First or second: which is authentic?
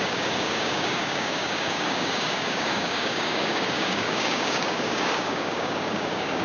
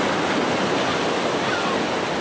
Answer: second